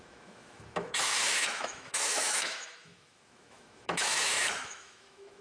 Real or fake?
fake